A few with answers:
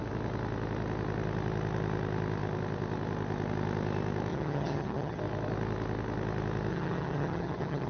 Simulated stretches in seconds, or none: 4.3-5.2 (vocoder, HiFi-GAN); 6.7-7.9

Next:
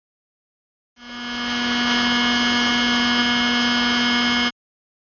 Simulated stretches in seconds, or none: none

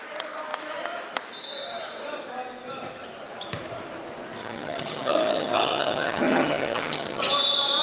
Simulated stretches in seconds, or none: 4.4-7.2 (vocoder, HiFi-GAN)

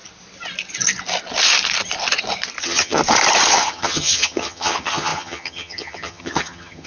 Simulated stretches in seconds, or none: 2.6-3.0 (vocoder, HiFi-GAN); 3.5-6.9

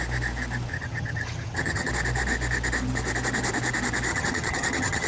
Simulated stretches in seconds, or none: 0.7-1.9 (vocoder, HiFi-GAN); 4.1-5.1

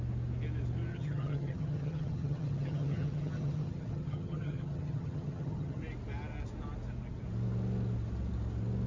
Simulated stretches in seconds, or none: 0.9-5.8 (vocoder, HiFi-GAN)